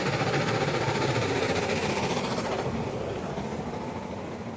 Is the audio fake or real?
real